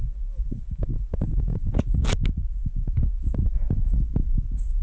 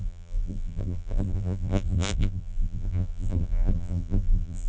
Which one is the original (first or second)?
first